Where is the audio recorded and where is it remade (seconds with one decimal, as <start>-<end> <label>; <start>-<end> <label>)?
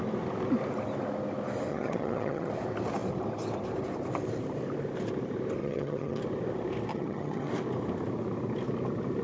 0.0-1.7 recorded; 1.7-2.5 remade; 2.5-5.6 recorded; 5.6-6.2 remade; 6.2-6.9 recorded; 6.9-7.5 remade; 7.5-9.2 recorded